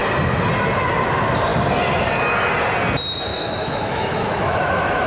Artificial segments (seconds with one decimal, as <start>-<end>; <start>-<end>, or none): 3.3-5.1